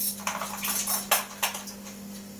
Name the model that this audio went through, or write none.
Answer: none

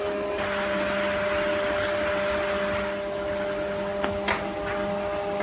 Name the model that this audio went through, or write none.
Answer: none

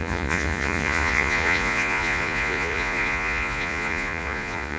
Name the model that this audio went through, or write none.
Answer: vocoder, Vocos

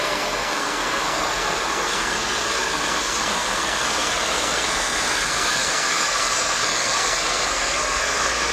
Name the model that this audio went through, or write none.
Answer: codec, SNAC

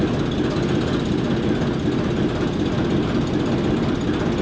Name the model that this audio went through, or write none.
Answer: none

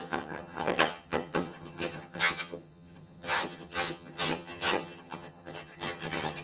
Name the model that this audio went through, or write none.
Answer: vocoder, HiFi-GAN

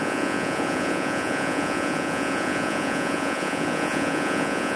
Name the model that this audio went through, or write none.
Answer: vocoder, Vocos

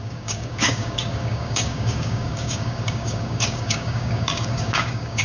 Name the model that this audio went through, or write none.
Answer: codec, DAC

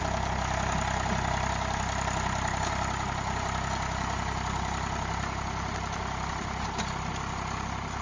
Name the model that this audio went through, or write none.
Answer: none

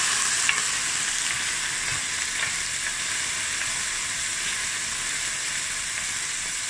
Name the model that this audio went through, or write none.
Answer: none